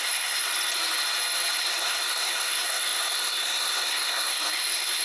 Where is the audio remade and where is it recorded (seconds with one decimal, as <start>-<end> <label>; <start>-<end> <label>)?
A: 0.0-0.5 remade; 0.5-1.6 recorded; 1.6-5.0 remade